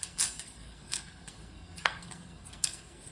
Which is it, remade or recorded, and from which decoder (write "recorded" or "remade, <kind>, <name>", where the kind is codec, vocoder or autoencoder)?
remade, codec, SNAC